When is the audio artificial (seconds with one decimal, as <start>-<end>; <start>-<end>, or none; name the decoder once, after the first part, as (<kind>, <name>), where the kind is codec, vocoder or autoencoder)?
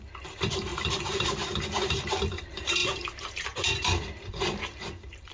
0.0-5.3 (vocoder, BigVGAN v2)